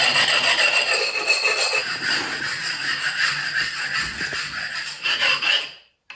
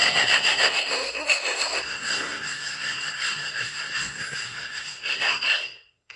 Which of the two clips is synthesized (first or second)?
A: second